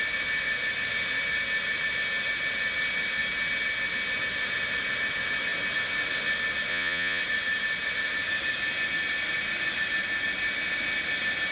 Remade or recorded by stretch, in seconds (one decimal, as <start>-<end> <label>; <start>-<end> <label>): 0.0-6.7 recorded; 6.7-7.2 remade; 7.2-11.5 recorded